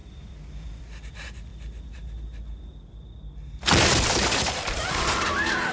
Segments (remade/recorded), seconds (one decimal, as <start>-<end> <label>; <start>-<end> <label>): 0.0-0.8 remade; 0.8-5.7 recorded